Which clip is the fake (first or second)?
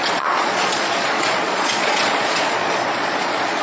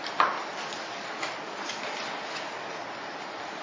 first